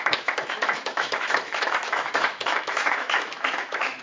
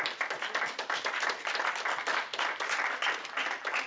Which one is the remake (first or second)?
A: first